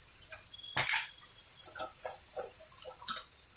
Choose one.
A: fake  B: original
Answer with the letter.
B